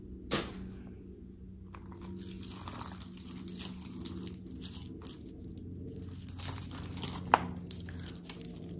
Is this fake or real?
real